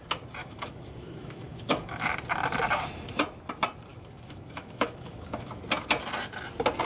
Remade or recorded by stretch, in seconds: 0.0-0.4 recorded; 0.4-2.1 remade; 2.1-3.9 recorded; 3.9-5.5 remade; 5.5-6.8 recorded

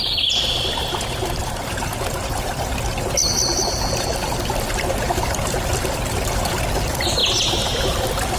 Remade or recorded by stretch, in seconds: 0.0-8.4 recorded